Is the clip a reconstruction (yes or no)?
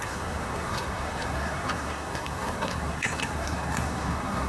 yes